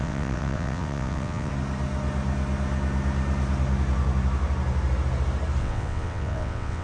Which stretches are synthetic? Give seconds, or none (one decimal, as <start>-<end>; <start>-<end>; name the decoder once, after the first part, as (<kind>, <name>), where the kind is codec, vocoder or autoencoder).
0.0-1.5 (vocoder, WaveNeXt); 5.6-6.8